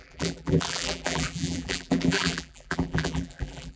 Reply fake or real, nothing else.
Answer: fake